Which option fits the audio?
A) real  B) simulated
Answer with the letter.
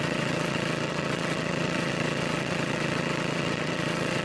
B